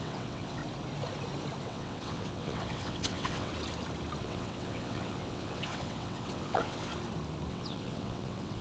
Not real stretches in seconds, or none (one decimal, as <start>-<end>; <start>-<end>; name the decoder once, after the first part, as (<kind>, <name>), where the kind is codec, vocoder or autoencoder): 0.0-0.6 (vocoder, WaveNeXt); 1.6-3.5; 4.2-6.9; 7.5-8.6